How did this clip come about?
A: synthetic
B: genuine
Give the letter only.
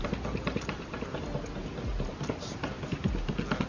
B